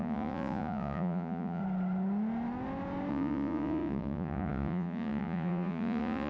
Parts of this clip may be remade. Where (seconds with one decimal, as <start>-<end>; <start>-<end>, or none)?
0.0-1.6; 3.1-6.3